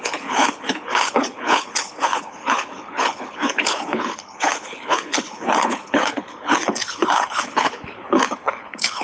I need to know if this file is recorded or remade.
remade